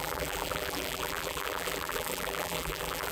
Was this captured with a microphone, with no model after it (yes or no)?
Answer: no